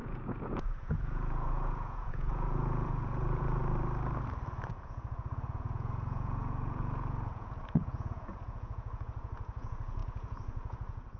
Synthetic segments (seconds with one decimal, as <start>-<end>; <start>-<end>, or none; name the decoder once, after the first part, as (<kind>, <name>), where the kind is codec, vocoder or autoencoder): 0.0-3.6 (vocoder, Vocos); 4.7-11.2

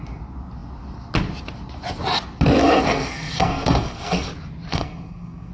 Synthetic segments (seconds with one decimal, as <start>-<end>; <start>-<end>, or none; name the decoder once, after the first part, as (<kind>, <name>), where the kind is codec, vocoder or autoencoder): 2.6-4.3 (codec, SNAC); 4.7-5.5

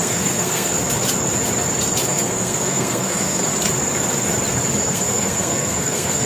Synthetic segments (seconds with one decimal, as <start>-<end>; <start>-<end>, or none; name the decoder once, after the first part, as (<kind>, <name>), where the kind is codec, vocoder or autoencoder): 0.0-0.8 (codec, SNAC); 2.1-3.4; 4.8-6.2

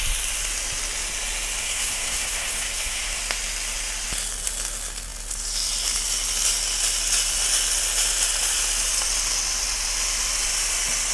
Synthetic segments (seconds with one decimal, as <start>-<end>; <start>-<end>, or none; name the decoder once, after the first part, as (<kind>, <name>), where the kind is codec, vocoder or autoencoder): 1.6-3.2 (codec, SNAC)

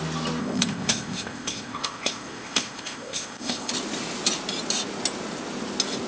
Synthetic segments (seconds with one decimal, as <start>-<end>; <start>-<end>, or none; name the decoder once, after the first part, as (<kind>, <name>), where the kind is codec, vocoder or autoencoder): 0.4-3.7 (codec, ZipCodec)

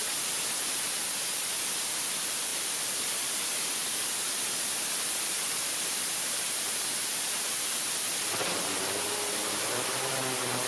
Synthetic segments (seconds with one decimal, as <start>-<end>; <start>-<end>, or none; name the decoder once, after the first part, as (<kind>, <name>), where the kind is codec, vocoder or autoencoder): none